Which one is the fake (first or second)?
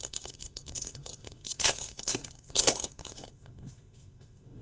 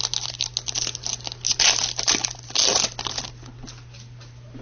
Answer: first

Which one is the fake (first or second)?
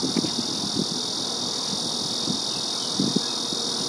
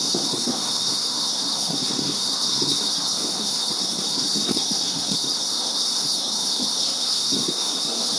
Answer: second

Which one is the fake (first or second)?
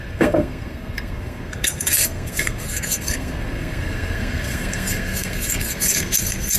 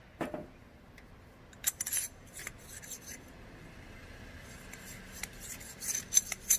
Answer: first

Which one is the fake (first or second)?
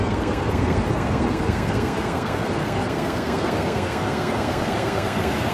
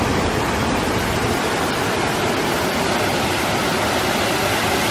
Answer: first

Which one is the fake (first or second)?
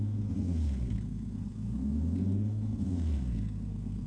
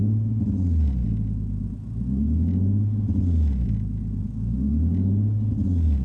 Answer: first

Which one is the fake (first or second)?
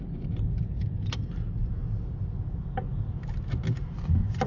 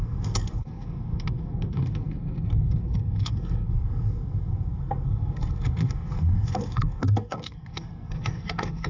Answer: second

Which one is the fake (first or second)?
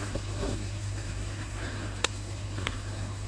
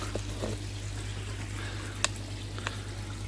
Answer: first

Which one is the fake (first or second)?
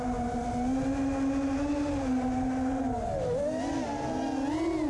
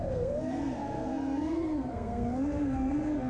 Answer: second